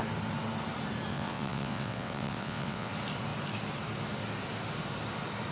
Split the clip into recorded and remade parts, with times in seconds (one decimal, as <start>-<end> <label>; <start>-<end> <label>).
0.0-1.1 recorded; 1.1-2.9 remade; 2.9-5.5 recorded